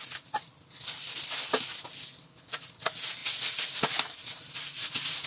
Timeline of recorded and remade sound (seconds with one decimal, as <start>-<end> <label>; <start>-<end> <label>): 0.0-5.3 recorded